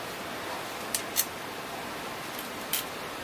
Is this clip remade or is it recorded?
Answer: recorded